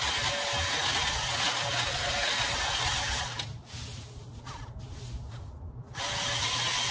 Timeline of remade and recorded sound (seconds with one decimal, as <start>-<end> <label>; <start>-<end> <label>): 0.0-6.9 recorded